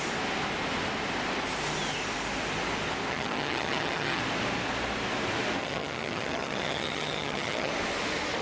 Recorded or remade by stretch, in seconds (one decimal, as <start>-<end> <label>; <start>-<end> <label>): 0.0-3.1 recorded; 3.1-4.2 remade; 4.2-5.6 recorded; 5.6-7.7 remade; 7.7-8.4 recorded